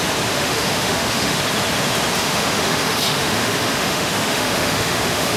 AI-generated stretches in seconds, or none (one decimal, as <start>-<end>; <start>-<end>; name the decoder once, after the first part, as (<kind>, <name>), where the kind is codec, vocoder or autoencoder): 0.4-1.4 (autoencoder, DAC-VAE); 2.2-5.4